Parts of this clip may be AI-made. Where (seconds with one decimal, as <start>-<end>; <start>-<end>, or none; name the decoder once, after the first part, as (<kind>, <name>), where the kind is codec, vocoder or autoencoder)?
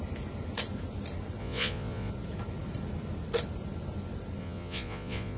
1.4-2.1 (vocoder, Vocos); 4.4-5.4